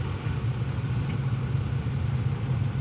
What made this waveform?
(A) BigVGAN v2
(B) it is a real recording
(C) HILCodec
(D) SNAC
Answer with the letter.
B